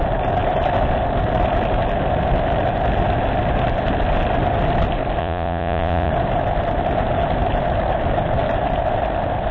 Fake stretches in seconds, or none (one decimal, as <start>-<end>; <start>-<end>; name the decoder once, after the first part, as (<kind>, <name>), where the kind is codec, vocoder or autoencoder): 5.2-6.1 (vocoder, Vocos)